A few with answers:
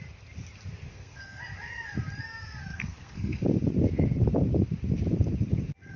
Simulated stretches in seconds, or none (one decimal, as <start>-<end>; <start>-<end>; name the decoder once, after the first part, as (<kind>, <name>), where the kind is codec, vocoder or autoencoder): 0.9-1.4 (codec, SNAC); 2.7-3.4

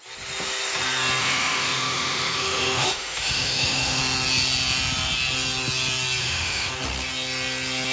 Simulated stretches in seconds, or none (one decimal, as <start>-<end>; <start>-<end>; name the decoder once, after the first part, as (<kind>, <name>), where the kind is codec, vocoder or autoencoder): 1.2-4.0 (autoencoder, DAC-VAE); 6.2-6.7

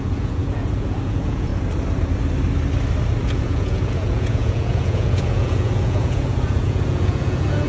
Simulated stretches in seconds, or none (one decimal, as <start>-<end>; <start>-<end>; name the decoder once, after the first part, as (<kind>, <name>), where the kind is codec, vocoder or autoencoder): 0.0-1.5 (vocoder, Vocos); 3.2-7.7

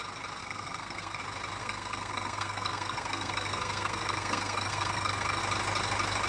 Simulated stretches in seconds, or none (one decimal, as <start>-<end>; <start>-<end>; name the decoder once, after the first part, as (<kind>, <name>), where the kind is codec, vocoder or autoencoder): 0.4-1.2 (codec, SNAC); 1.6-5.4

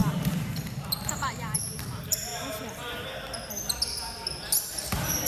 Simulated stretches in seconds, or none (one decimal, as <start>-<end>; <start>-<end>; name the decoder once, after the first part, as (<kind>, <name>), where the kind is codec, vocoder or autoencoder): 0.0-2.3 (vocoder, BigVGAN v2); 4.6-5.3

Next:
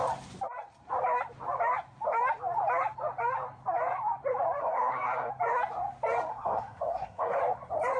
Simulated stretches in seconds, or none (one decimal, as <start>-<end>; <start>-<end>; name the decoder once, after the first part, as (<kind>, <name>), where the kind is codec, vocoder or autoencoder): 4.6-5.3 (codec, SNAC); 6.3-7.4

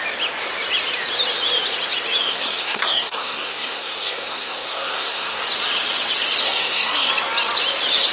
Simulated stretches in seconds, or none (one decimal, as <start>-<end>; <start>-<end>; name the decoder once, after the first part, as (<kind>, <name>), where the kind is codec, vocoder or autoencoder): 2.2-5.4 (codec, SNAC); 6.4-7.1